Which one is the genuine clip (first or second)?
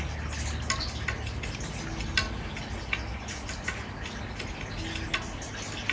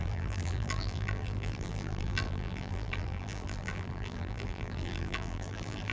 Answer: first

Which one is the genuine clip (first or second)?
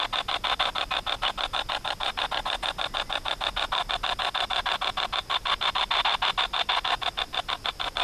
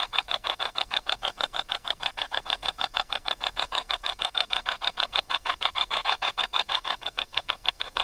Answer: first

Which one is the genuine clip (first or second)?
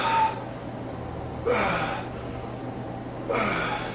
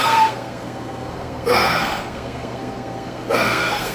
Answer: first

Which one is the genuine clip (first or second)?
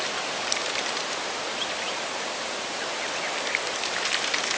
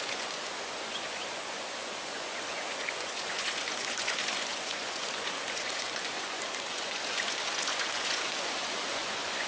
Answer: first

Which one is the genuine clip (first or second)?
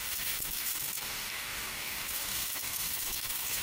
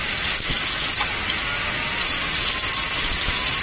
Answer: second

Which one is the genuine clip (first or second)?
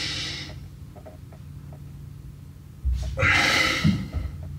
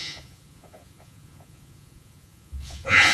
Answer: first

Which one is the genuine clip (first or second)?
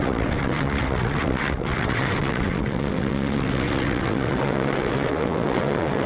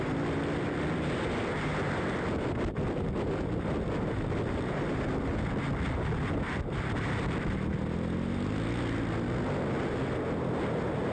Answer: second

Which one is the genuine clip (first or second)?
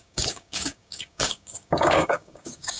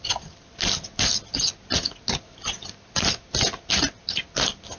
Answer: second